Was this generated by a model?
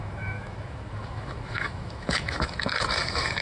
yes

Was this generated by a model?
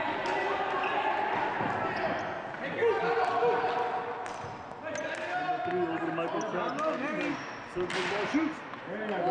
no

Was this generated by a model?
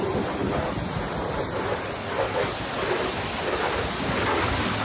no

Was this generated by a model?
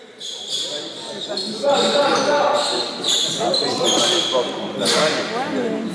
no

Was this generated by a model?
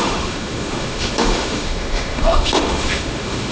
yes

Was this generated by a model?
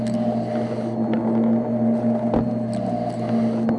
no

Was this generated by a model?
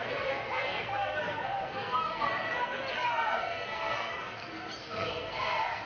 yes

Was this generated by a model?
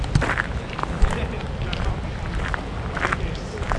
no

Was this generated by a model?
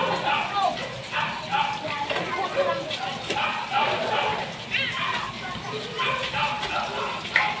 no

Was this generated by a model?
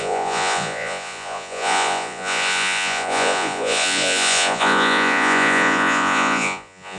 yes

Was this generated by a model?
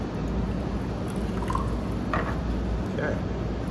no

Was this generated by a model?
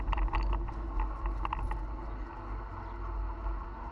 no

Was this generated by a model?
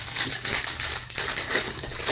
yes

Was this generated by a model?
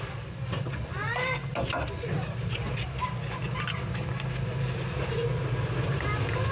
no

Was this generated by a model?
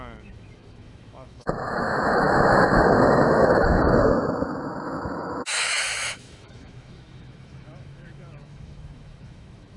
yes